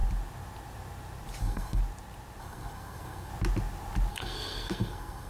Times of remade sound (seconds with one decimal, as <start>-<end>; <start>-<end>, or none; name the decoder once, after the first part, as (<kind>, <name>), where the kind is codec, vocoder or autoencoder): 1.4-1.8 (codec, SNAC); 2.4-3.3; 4.1-5.3